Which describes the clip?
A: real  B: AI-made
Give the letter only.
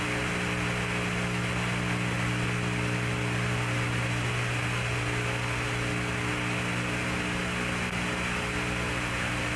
A